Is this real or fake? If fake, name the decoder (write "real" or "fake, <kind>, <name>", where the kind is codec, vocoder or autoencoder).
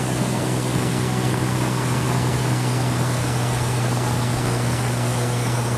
fake, codec, SNAC